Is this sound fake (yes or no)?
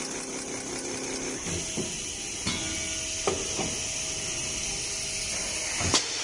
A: no